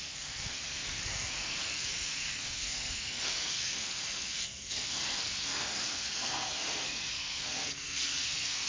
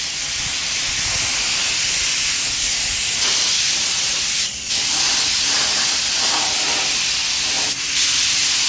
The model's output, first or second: first